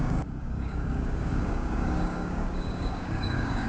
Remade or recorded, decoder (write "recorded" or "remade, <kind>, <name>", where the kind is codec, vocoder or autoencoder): remade, codec, DAC